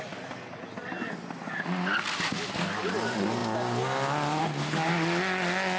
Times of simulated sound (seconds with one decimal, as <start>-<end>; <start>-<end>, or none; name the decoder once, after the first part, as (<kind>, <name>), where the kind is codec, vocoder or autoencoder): none

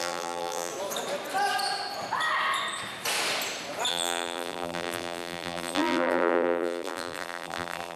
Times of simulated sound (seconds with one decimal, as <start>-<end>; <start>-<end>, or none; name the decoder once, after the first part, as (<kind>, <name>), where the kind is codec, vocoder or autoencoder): 0.0-0.7 (vocoder, BigVGAN v2); 3.9-8.0

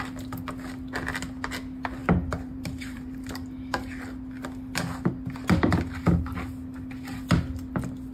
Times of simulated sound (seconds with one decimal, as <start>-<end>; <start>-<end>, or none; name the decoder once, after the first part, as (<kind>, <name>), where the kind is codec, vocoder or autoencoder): 2.0-3.2 (vocoder, BigVGAN v2)

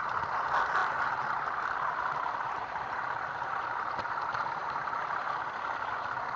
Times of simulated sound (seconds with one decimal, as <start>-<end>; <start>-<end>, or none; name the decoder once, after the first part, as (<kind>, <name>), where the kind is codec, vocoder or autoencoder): 0.8-3.2 (vocoder, BigVGAN v2); 4.6-5.2